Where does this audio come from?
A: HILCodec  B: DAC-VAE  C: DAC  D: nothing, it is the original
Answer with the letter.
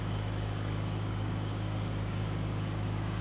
C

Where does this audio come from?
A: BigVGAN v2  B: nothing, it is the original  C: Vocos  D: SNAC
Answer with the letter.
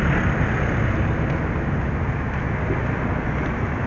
B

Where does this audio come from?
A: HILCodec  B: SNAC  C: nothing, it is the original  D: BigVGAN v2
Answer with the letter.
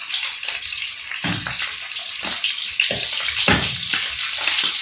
C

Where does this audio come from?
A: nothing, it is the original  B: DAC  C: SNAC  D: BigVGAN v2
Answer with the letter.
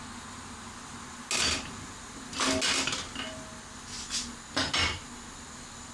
A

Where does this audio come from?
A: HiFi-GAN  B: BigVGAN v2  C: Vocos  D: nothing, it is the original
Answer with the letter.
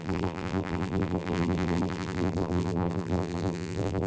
B